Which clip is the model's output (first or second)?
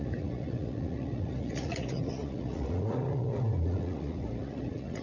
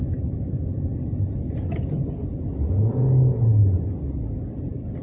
first